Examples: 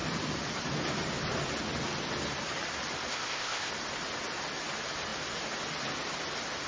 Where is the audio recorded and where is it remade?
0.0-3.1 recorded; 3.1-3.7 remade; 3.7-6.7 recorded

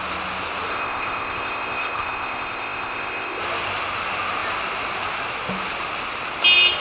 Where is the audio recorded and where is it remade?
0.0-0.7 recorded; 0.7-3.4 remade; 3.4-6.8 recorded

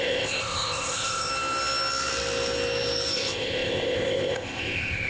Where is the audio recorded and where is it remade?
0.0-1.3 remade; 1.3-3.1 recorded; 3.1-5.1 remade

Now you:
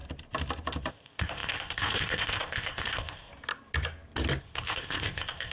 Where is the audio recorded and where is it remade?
0.0-0.9 recorded; 0.9-3.3 remade; 3.3-4.4 recorded; 4.4-5.5 remade

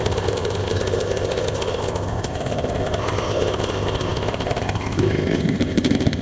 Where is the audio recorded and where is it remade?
0.0-6.2 remade

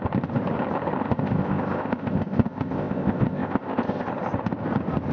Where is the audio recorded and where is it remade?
0.0-1.0 recorded; 1.0-4.1 remade; 4.1-5.1 recorded